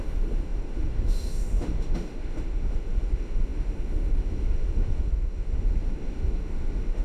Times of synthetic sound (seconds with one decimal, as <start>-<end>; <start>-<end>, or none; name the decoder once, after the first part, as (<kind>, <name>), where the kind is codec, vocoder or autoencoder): 0.0-7.0 (autoencoder, DAC-VAE)